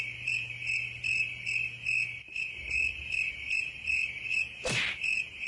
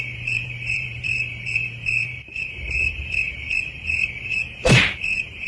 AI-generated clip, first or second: second